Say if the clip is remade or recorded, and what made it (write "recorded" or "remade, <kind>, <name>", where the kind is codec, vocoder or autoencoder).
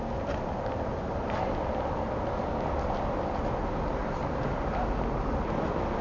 recorded